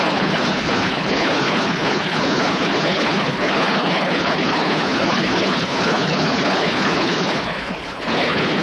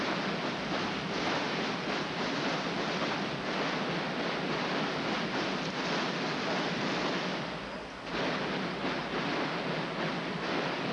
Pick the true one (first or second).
second